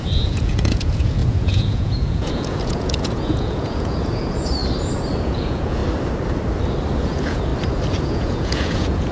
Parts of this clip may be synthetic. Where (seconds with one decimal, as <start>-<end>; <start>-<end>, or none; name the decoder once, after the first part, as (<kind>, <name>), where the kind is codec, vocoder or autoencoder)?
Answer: 0.0-4.6 (vocoder, Vocos); 5.2-5.8; 7.0-7.5; 8.0-9.1